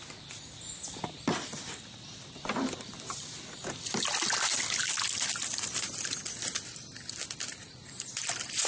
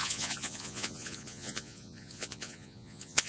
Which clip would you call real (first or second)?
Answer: first